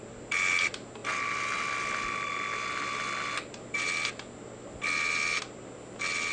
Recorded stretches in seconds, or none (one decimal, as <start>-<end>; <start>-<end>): 0.0-6.3